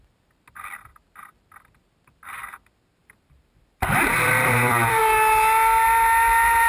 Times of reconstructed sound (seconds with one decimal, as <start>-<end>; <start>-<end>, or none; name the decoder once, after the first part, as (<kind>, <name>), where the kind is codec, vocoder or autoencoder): 3.0-5.0 (vocoder, BigVGAN v2)

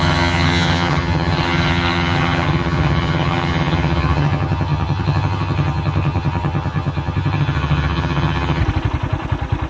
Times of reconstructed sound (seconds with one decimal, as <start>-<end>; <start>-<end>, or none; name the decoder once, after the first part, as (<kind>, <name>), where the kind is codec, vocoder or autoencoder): 0.0-8.6 (vocoder, HiFi-GAN)

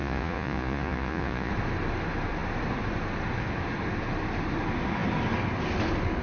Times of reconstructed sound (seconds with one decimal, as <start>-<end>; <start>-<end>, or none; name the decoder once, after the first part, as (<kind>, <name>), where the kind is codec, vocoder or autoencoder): 0.0-1.5 (vocoder, Vocos)

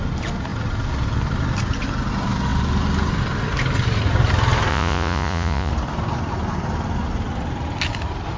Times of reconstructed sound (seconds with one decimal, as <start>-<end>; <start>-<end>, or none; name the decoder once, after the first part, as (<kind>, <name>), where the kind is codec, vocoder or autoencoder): 4.7-5.7 (vocoder, Vocos)

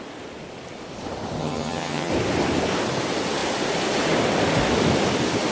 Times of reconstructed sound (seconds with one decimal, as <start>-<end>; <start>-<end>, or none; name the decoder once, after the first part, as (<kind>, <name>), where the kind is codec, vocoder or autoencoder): 1.4-2.1 (vocoder, HiFi-GAN)

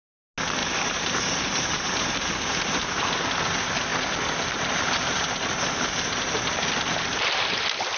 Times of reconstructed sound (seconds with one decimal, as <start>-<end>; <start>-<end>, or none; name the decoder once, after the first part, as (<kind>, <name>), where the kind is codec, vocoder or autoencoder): 0.6-2.9 (vocoder, BigVGAN v2)

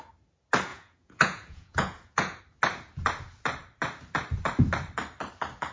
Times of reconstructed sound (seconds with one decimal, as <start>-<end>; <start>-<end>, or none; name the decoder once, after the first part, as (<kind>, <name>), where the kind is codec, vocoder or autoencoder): 0.7-2.4 (vocoder, Vocos)

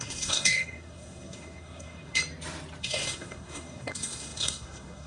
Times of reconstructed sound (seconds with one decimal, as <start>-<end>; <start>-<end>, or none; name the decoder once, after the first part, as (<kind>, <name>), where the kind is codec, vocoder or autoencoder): 0.0-2.2 (codec, SNAC); 2.8-5.1